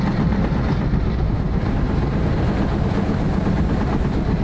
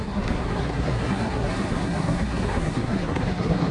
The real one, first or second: first